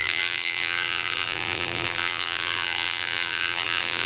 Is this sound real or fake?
fake